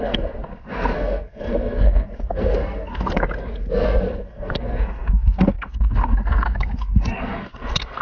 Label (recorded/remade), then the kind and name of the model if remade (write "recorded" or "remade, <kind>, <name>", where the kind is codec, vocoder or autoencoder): remade, codec, SNAC